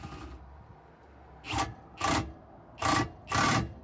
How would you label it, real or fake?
real